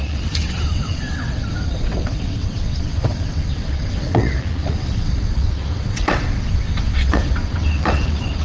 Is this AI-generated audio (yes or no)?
yes